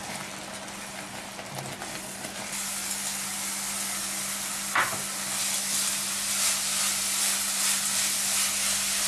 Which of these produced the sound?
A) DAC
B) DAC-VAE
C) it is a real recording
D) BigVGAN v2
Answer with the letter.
C